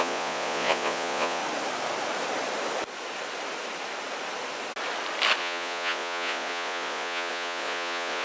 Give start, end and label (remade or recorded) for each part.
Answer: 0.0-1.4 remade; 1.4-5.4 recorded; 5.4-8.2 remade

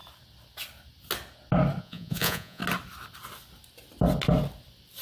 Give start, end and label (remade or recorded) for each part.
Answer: 0.0-1.8 recorded; 1.8-2.6 remade; 2.6-5.0 recorded